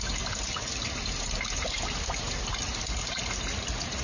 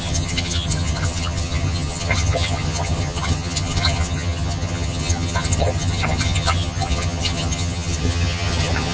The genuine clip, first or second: first